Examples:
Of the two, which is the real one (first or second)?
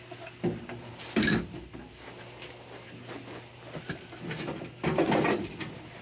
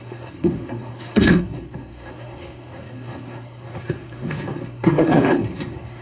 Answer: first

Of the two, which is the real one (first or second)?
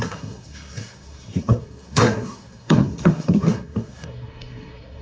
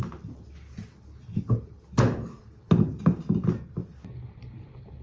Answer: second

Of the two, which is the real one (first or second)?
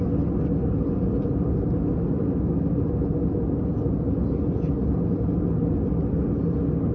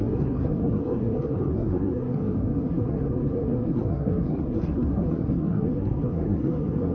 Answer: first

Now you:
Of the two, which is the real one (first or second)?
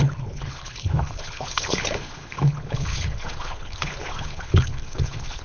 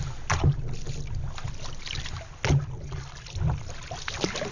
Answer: second